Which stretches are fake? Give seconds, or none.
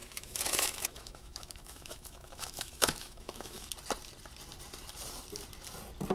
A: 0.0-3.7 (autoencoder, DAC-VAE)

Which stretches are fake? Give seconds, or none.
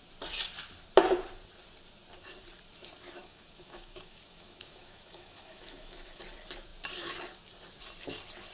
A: 3.2-6.2 (autoencoder, DAC-VAE)